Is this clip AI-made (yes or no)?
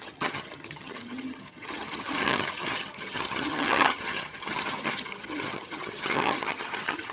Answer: yes